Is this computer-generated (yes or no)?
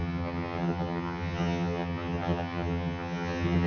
yes